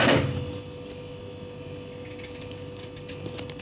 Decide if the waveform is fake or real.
fake